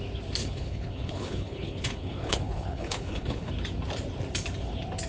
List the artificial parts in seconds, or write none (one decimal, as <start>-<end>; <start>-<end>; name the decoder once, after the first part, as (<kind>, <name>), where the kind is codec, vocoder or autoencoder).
0.4-3.5 (codec, HILCodec)